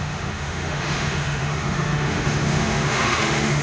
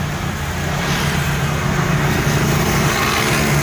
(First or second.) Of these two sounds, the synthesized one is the first